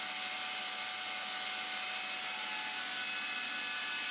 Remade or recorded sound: recorded